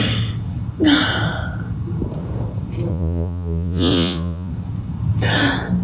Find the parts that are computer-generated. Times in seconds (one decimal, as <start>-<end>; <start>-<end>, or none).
2.9-4.5